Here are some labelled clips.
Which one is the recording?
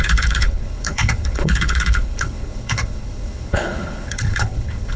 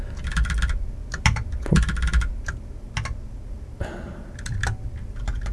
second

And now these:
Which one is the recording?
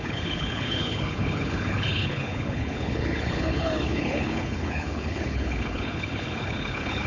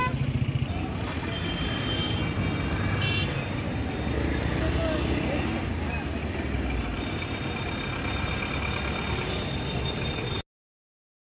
second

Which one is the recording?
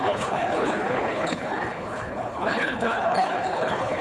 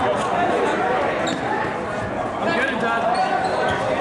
second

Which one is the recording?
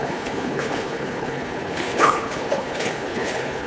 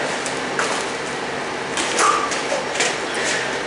second